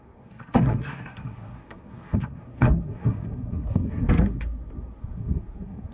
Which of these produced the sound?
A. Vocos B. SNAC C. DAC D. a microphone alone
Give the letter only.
B